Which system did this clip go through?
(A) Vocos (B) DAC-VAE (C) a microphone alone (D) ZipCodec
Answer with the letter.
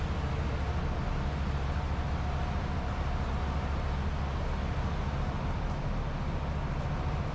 C